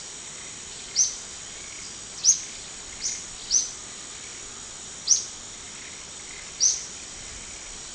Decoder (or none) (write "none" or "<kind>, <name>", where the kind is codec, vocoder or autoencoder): none